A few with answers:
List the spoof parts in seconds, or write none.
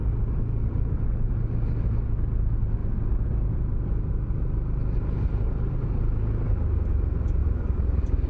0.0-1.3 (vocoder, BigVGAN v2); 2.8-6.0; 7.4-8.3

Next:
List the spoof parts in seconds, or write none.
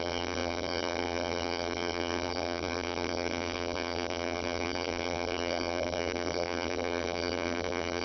0.0-8.0 (vocoder, BigVGAN v2)